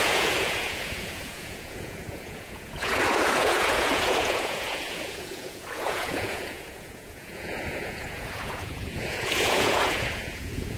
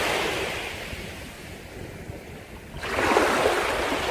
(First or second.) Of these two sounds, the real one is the second